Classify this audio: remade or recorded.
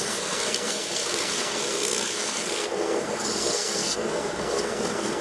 remade